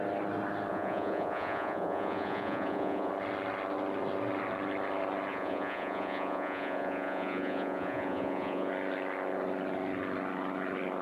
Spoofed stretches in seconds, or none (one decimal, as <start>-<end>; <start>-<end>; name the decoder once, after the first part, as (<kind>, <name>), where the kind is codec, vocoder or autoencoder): 0.7-3.1 (vocoder, Vocos); 5.3-8.7